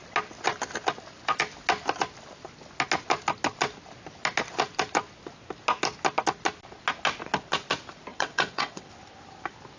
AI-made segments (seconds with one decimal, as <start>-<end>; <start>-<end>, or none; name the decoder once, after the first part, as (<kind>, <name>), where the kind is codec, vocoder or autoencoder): 8.1-8.9 (vocoder, WaveNeXt)